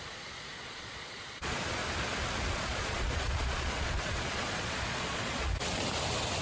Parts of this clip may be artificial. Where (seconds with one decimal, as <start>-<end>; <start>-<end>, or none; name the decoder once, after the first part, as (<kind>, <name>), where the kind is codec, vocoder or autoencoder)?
0.0-1.8 (vocoder, Vocos); 2.5-5.5